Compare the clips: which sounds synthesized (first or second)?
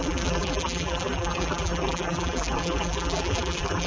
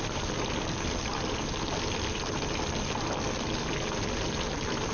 first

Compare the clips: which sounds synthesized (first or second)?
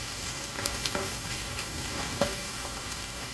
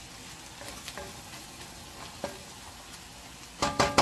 first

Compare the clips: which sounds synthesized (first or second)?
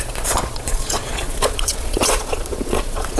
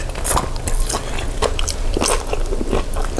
first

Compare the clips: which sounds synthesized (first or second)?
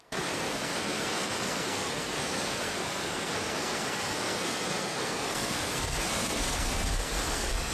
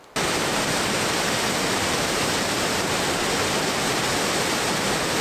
first